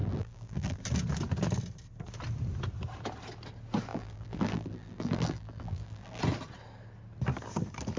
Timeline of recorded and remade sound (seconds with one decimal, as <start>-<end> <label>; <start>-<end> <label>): 0.0-0.8 remade; 0.8-3.9 recorded; 3.9-6.2 remade; 6.2-8.0 recorded